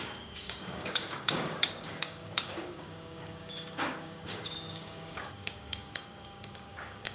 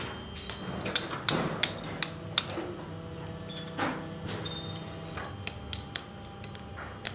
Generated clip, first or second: first